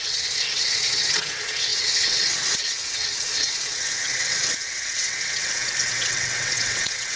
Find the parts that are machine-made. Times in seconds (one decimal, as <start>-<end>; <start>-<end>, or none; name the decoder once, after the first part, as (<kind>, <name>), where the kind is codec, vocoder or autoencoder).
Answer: 0.0-7.2 (vocoder, WaveNeXt)